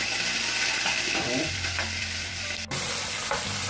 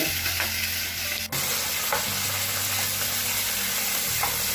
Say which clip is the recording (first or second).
second